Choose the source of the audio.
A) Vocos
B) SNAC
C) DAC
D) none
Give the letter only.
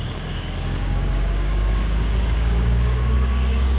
C